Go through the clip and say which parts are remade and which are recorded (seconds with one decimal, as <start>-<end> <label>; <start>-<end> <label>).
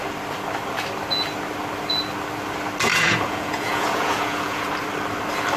0.0-2.9 recorded; 2.9-4.7 remade; 4.7-5.6 recorded